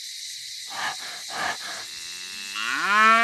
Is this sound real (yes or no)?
yes